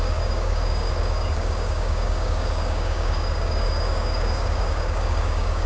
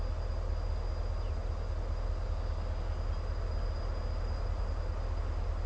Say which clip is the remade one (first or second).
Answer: first